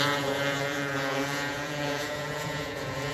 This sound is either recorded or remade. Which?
remade